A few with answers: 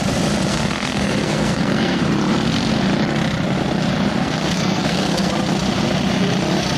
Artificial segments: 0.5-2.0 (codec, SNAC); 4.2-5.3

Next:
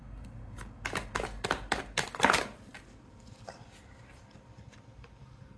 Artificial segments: none

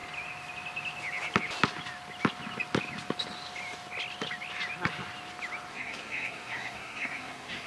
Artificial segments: 5.7-7.7 (codec, SNAC)

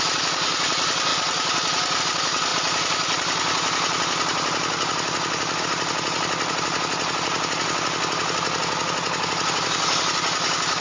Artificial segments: none

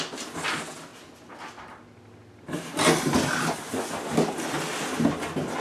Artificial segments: none

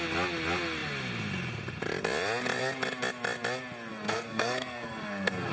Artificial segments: 3.9-5.5 (codec, SNAC)

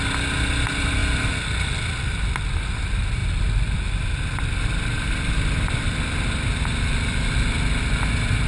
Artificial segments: none

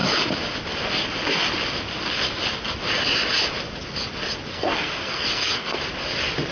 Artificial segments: 4.5-5.8 (codec, SNAC)